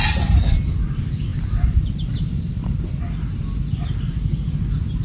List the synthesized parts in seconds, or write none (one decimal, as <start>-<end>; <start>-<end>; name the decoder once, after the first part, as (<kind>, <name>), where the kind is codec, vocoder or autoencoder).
1.3-3.0 (vocoder, BigVGAN v2)

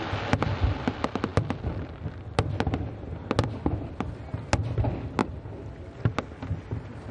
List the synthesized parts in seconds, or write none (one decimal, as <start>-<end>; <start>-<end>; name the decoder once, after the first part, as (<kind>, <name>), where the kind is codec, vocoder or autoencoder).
none

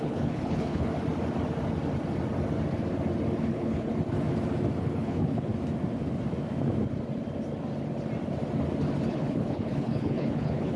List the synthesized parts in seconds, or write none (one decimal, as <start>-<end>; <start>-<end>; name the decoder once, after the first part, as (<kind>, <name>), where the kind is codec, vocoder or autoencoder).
0.0-0.9 (codec, HILCodec); 3.4-3.9; 4.8-5.5; 9.1-10.8

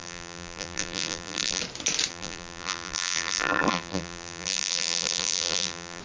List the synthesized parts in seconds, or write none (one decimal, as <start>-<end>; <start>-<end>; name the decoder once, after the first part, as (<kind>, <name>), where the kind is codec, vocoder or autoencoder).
0.0-1.6 (vocoder, BigVGAN v2); 2.1-6.0

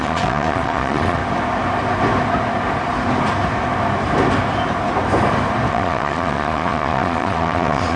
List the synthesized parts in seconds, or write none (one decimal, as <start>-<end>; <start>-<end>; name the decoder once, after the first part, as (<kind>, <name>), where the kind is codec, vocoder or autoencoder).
0.0-1.2 (vocoder, Vocos); 5.7-8.0

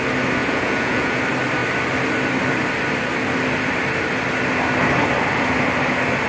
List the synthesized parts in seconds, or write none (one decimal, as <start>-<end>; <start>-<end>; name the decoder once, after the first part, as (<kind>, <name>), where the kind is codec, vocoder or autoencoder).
0.4-1.2 (vocoder, Vocos)